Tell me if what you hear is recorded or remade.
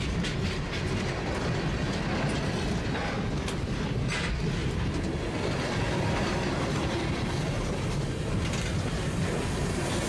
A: recorded